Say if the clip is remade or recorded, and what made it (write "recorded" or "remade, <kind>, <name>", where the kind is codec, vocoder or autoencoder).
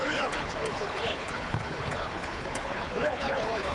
remade, codec, HILCodec